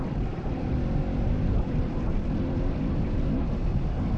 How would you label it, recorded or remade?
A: recorded